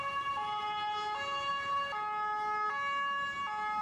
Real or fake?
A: real